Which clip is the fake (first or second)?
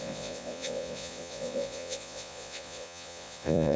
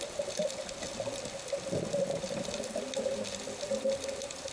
first